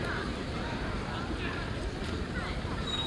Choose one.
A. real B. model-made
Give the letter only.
B